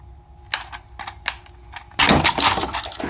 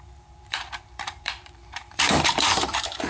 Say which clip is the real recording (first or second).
first